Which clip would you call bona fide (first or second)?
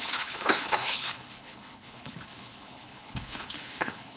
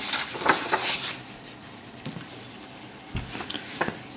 second